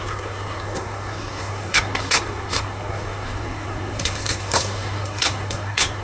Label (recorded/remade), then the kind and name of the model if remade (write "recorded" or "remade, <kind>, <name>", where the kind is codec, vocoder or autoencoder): remade, codec, SNAC